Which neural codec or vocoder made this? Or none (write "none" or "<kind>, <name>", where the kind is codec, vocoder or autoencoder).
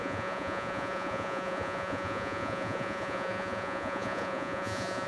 vocoder, Vocos